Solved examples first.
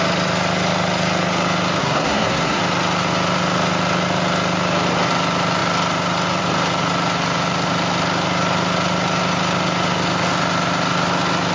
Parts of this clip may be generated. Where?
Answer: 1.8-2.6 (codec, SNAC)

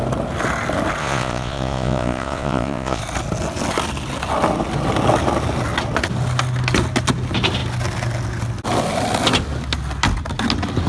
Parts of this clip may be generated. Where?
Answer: 1.0-3.0 (vocoder, Vocos)

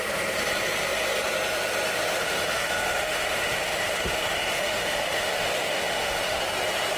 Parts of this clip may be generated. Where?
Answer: 2.2-6.4 (autoencoder, DAC-VAE)